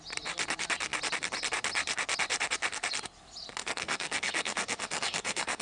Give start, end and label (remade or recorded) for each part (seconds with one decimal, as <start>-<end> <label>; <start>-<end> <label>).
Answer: 0.0-3.6 recorded; 3.6-5.6 remade

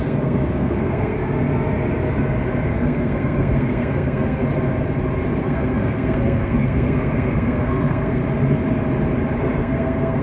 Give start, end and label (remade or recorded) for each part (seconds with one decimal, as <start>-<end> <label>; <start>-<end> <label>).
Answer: 0.0-1.2 remade; 1.2-2.7 recorded; 2.7-4.4 remade; 4.4-5.4 recorded; 5.4-8.2 remade; 8.2-9.4 recorded; 9.4-10.2 remade

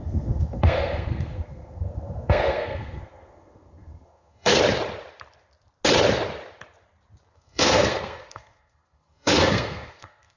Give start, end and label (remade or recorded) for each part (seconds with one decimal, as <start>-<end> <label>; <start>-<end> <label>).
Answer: 0.0-4.6 remade; 4.6-7.3 recorded; 7.3-10.4 remade

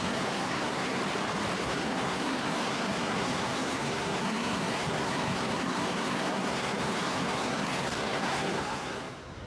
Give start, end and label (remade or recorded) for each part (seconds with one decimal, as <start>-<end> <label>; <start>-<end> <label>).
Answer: 0.0-1.0 remade; 1.0-1.6 recorded; 1.6-9.5 remade

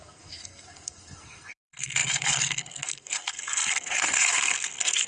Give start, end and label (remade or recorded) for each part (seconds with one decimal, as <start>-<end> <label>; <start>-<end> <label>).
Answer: 0.0-5.1 remade

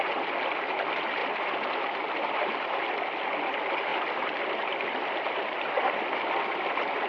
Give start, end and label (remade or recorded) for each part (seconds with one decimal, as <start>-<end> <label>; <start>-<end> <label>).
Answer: 0.0-7.1 recorded